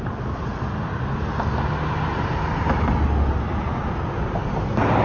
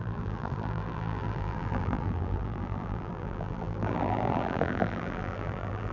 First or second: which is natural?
first